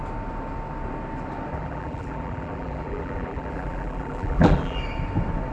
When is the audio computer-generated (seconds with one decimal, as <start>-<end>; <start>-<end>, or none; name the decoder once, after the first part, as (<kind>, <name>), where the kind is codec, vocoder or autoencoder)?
1.5-4.8 (vocoder, BigVGAN v2)